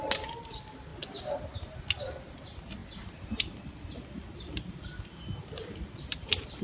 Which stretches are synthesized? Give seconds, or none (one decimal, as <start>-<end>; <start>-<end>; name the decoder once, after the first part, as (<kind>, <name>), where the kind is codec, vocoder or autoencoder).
none